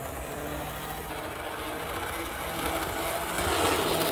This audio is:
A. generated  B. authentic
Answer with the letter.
B